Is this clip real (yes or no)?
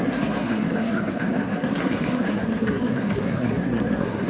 no